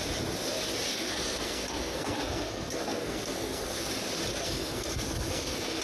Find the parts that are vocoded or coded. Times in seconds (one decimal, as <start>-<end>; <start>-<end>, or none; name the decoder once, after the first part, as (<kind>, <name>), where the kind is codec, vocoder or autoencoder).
0.9-3.9 (codec, SNAC); 4.3-5.8